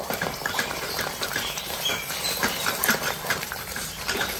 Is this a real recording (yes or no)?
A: no